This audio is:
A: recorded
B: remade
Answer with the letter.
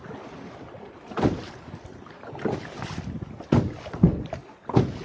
A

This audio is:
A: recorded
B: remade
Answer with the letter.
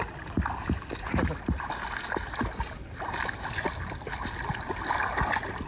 A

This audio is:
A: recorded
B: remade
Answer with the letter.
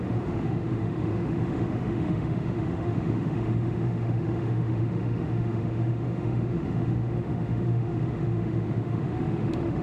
B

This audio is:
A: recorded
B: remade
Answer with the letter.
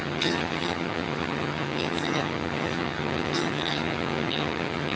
B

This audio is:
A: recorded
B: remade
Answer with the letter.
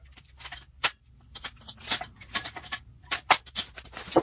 B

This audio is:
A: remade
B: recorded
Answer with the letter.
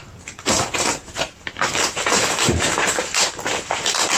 A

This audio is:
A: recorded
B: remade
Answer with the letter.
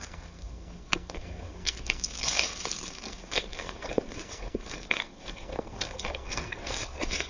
B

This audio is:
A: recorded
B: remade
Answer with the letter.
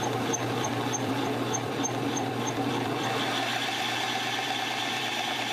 B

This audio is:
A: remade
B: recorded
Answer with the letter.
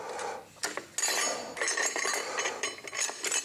B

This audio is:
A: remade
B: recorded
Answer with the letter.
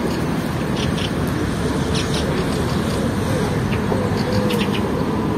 B